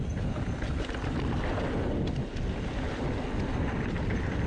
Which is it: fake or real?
real